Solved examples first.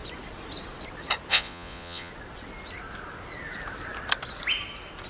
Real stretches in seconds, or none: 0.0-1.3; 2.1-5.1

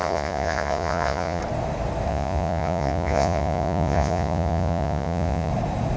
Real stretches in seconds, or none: 1.4-2.1; 5.5-6.0

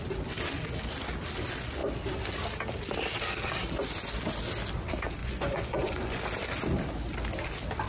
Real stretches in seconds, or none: 0.0-5.2; 6.2-7.9

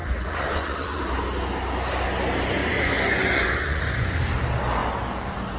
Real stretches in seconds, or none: 1.0-2.6; 4.2-5.6

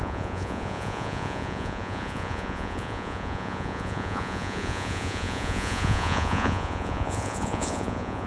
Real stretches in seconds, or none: none

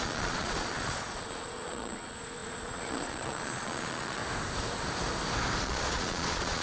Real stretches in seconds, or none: 4.2-5.6

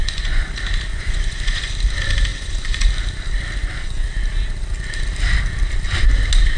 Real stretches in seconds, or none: 0.5-0.9; 1.7-2.3; 2.9-3.6; 4.1-6.6

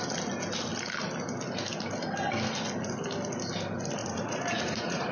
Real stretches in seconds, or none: 0.0-4.0